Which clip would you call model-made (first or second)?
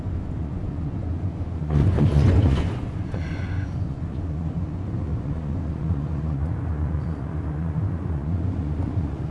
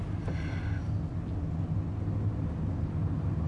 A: first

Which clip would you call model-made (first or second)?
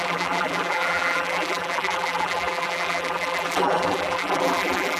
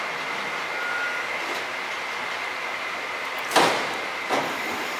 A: first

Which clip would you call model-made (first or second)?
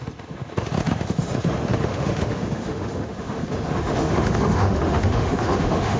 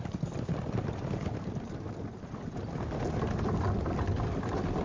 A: first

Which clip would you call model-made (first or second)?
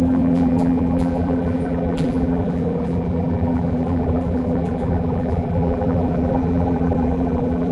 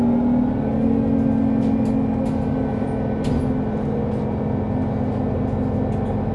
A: first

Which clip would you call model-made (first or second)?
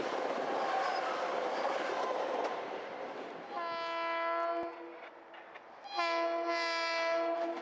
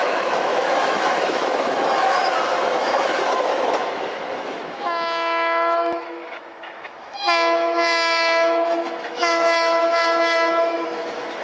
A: second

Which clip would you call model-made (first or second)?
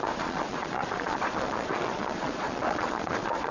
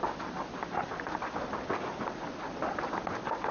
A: first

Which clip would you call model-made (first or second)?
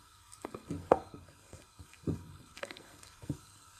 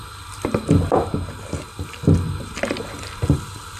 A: first